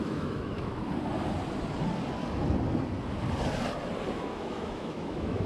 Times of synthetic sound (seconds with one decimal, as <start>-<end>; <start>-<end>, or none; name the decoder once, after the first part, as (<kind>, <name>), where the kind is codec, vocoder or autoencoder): 0.0-0.8 (autoencoder, DAC-VAE); 4.1-5.5